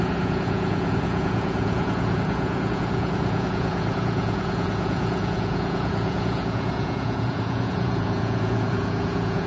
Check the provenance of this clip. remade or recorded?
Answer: remade